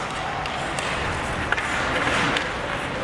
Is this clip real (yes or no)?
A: yes